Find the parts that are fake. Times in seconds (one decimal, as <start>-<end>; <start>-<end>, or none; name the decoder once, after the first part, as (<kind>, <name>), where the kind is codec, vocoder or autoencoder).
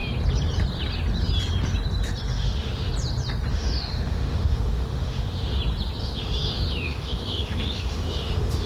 2.3-2.9 (autoencoder, DAC-VAE); 3.5-5.6; 6.0-8.7